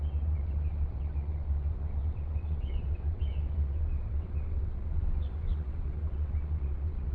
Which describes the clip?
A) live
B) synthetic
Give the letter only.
B